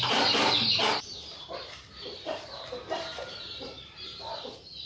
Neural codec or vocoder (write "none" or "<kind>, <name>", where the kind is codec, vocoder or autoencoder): vocoder, BigVGAN v2